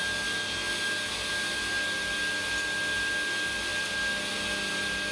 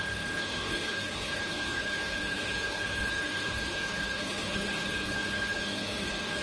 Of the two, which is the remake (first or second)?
second